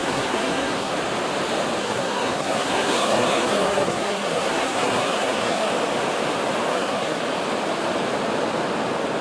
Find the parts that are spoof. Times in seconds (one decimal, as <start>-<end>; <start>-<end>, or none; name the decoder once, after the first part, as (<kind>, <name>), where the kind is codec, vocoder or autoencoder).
0.0-0.9 (codec, SNAC); 1.8-5.7; 6.7-7.2